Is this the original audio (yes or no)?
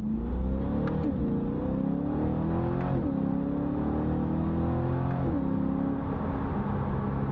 yes